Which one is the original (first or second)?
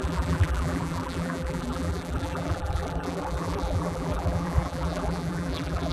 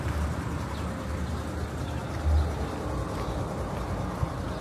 second